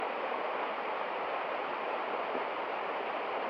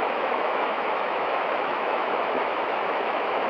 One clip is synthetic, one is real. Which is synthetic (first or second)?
second